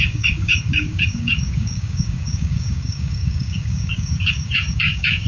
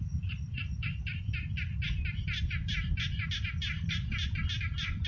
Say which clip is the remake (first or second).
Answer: first